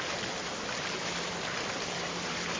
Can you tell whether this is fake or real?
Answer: real